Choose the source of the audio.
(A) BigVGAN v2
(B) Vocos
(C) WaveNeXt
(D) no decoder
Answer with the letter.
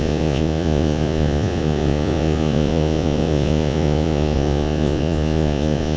B